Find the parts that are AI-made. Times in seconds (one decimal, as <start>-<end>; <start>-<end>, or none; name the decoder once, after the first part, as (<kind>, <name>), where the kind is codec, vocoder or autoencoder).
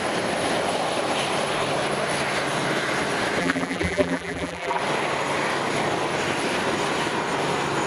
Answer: 3.4-4.8 (vocoder, BigVGAN v2)